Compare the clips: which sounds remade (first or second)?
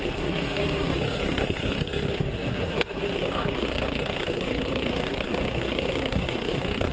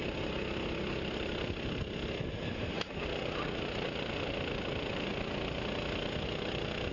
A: first